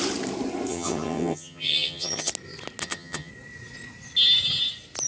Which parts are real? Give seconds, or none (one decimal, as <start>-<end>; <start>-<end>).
0.0-0.7; 2.3-2.8; 3.3-5.1